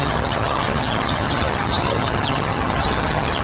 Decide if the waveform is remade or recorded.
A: remade